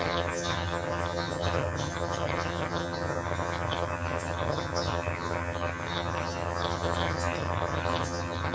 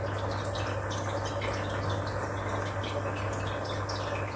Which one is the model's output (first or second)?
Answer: first